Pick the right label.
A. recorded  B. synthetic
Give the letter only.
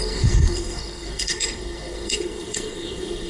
B